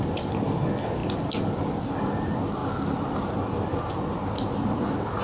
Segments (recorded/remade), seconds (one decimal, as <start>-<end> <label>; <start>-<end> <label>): 0.0-5.2 recorded

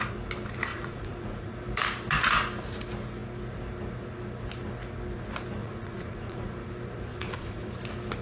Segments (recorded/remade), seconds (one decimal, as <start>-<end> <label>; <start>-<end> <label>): 0.0-0.7 recorded; 0.7-1.5 remade; 1.5-5.6 recorded; 5.6-6.5 remade; 6.5-7.1 recorded; 7.1-7.7 remade; 7.7-8.2 recorded